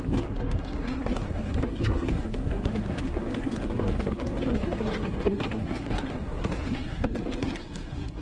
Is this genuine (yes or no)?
no